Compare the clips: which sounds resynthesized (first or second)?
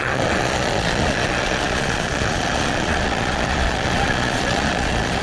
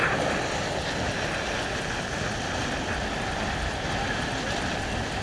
first